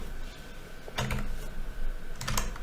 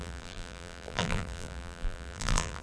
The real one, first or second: first